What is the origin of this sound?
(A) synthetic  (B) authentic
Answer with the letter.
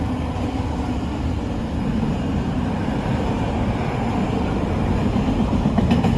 B